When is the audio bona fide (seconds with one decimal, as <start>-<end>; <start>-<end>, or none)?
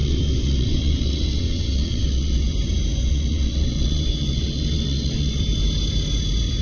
2.5-3.0; 5.4-6.6